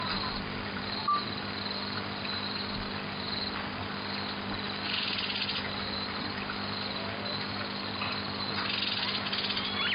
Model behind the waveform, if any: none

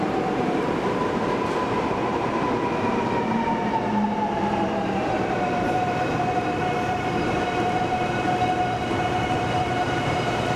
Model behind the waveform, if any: vocoder, BigVGAN v2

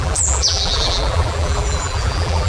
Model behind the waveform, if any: vocoder, BigVGAN v2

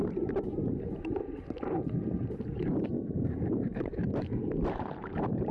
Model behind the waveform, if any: vocoder, BigVGAN v2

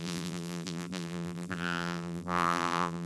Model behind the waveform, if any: vocoder, BigVGAN v2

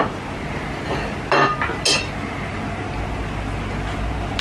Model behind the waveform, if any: none